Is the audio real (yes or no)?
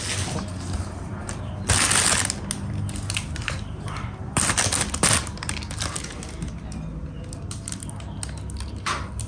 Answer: yes